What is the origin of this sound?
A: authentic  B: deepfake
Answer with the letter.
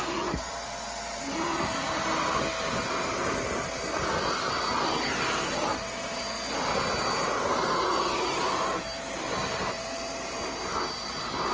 A